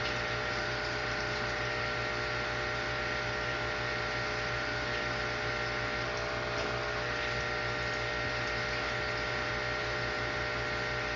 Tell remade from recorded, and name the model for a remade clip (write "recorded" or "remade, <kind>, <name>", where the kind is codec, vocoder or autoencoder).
recorded